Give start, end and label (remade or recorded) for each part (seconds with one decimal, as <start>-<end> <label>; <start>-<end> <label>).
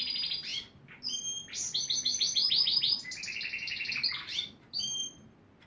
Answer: 0.0-5.7 recorded